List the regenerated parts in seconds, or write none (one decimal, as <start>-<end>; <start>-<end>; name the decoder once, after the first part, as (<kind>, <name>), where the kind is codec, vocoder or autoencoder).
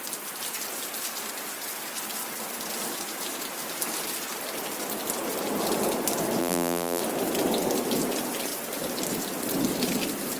6.4-7.0 (vocoder, BigVGAN v2)